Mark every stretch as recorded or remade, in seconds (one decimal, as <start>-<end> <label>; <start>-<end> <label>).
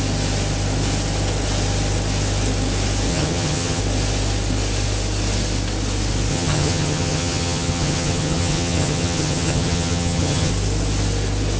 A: 0.0-3.1 recorded; 3.1-3.8 remade; 3.8-6.3 recorded; 6.3-10.5 remade; 10.5-11.6 recorded